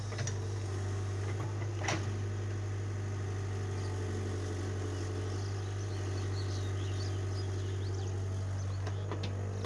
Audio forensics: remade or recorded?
recorded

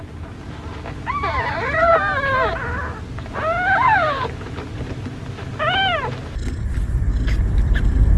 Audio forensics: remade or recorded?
recorded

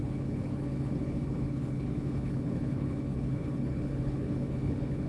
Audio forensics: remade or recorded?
remade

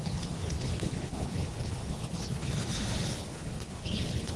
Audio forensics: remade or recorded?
remade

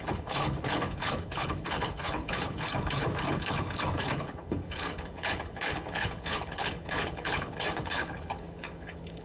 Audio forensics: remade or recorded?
remade